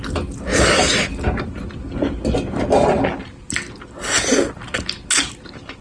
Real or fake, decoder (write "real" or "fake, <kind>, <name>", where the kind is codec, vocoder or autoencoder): real